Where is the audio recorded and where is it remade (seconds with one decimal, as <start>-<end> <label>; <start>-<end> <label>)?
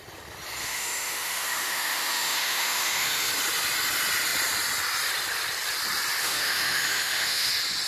0.0-0.6 recorded; 0.6-3.3 remade; 3.3-6.2 recorded; 6.2-7.5 remade; 7.5-7.9 recorded